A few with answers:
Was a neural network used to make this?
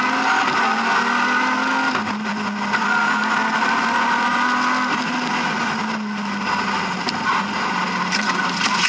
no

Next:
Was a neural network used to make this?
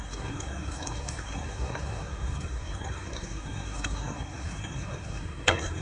yes